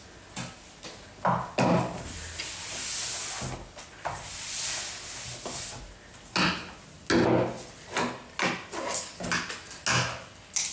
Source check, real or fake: real